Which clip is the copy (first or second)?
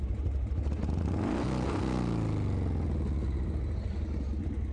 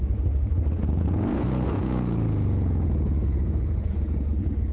second